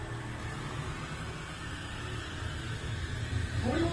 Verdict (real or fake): real